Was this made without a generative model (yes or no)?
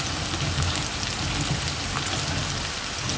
yes